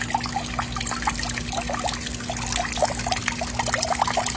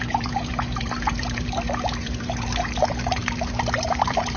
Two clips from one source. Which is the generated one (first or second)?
second